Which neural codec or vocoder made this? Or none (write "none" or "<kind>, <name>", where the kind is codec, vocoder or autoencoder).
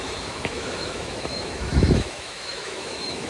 autoencoder, DAC-VAE